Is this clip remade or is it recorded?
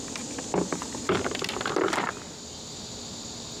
recorded